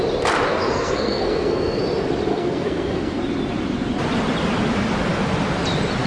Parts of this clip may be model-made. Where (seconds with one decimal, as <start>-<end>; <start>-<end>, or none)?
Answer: 0.5-1.8; 2.3-3.2